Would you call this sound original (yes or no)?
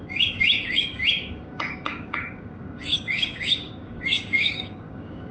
no